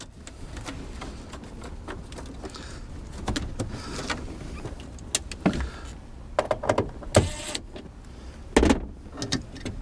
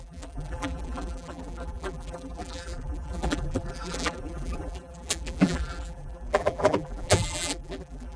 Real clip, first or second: first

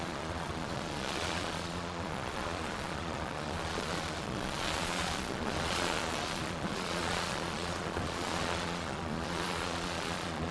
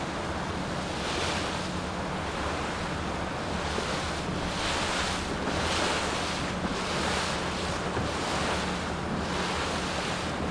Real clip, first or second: second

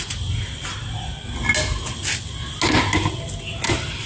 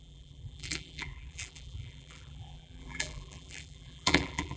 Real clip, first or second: first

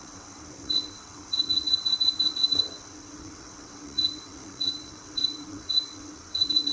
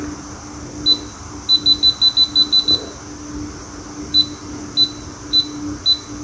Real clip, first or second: second